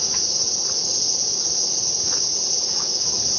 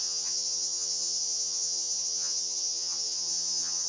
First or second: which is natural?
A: first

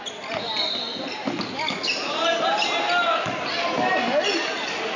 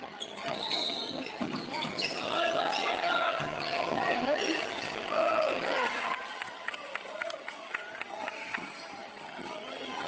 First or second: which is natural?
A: first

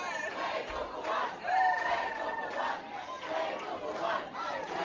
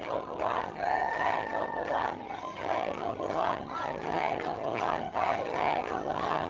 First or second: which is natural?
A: first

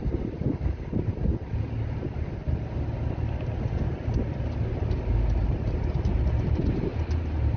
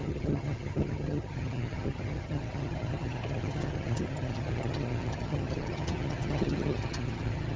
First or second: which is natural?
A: first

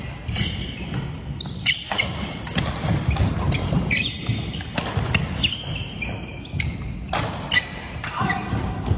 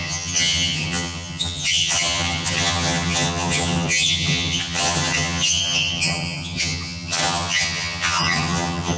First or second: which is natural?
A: first